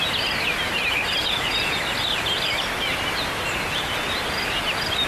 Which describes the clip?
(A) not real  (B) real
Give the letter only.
B